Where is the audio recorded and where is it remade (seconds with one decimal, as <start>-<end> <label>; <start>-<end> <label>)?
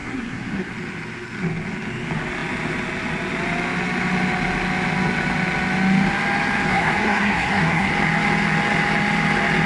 0.0-0.7 remade; 0.7-6.7 recorded; 6.7-7.9 remade; 7.9-9.7 recorded